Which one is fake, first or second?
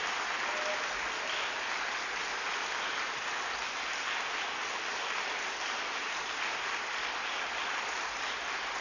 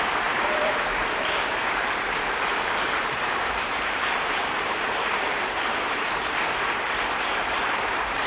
second